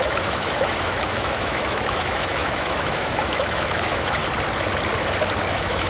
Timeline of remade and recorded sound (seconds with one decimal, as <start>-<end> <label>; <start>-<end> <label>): 0.0-4.2 remade; 4.2-5.5 recorded; 5.5-5.9 remade